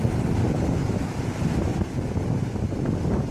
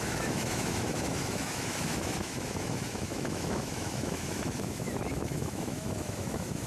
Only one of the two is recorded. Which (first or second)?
first